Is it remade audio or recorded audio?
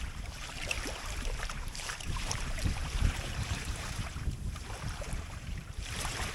remade